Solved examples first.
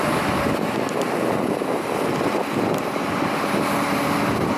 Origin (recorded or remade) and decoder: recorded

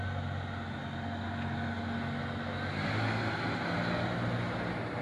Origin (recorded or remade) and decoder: recorded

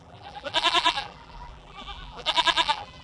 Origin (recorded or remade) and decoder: remade, vocoder, BigVGAN v2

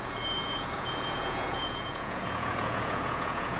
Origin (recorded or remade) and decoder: remade, vocoder, Vocos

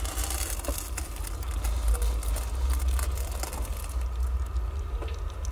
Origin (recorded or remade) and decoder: recorded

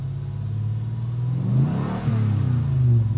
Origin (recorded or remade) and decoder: recorded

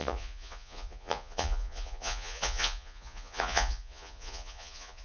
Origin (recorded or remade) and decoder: remade, vocoder, Vocos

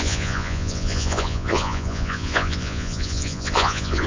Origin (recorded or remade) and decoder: remade, vocoder, Vocos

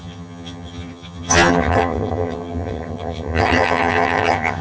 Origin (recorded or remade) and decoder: remade, vocoder, HiFi-GAN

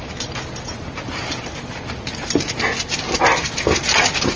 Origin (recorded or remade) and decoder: recorded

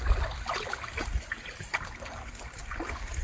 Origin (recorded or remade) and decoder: recorded